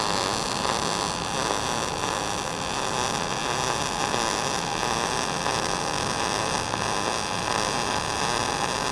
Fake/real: real